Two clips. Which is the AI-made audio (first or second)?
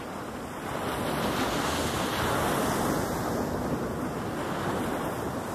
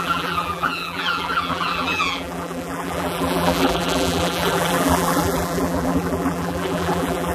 second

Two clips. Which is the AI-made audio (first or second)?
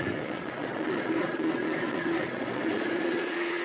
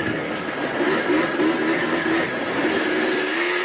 first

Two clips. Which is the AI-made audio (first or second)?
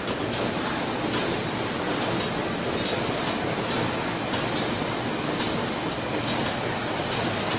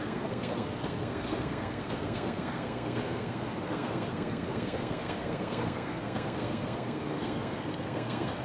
second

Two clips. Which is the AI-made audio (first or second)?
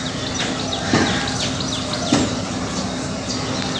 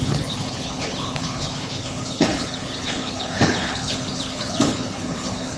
second